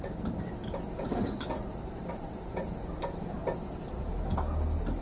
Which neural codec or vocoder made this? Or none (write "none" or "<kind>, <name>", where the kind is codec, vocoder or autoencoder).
none